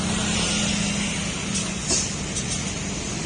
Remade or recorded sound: recorded